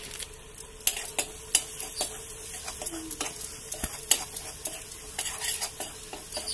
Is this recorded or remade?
recorded